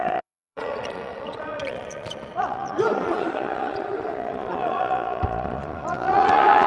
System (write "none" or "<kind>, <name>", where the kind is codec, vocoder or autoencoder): vocoder, Vocos